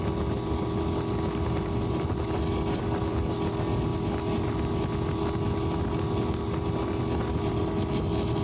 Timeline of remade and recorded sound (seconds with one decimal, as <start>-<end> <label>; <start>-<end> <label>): 0.0-8.4 recorded